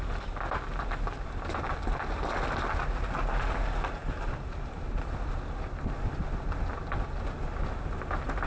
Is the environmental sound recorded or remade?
recorded